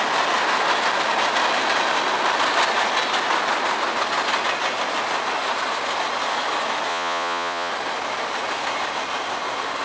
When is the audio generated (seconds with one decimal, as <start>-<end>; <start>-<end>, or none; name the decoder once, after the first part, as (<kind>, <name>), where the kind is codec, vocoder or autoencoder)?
6.9-7.7 (vocoder, Vocos)

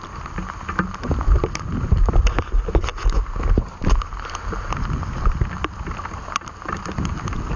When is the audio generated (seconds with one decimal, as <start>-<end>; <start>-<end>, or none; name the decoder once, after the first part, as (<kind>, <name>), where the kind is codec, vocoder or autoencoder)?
none

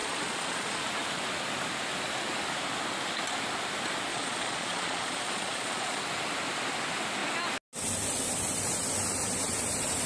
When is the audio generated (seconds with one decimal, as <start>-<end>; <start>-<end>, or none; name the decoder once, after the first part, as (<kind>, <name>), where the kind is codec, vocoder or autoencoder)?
0.0-0.8 (vocoder, Vocos); 4.1-6.0

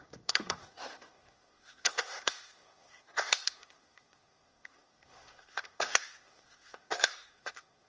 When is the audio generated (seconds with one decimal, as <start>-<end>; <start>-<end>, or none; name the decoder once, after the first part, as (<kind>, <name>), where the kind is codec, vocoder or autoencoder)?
0.0-7.9 (codec, SNAC)

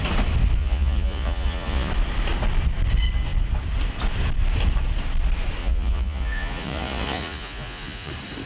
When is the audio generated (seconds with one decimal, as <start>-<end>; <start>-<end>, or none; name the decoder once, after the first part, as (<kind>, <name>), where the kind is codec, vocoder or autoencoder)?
0.6-1.9 (vocoder, Vocos); 5.6-8.1

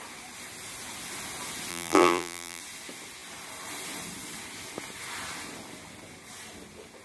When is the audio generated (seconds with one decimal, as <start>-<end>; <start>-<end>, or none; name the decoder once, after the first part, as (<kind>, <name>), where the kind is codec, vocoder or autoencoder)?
1.7-2.6 (vocoder, BigVGAN v2)

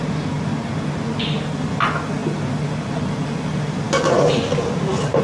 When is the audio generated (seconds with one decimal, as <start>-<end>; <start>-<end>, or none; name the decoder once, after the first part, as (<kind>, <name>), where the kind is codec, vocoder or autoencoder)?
none

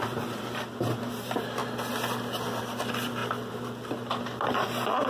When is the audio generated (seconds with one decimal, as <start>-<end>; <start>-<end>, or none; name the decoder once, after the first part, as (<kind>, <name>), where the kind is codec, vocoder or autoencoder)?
0.0-1.6 (vocoder, BigVGAN v2); 2.6-5.1